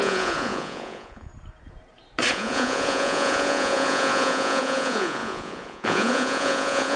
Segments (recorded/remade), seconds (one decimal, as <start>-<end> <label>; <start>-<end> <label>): 0.0-1.3 remade; 1.3-2.3 recorded; 2.3-7.0 remade